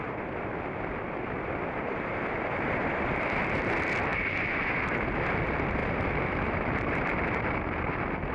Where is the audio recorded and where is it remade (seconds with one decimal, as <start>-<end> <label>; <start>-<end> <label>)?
0.0-4.1 remade; 4.1-4.8 recorded; 4.8-8.3 remade